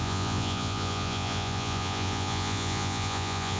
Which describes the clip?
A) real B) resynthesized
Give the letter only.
B